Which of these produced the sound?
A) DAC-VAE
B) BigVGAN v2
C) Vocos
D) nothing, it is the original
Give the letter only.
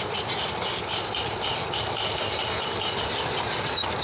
D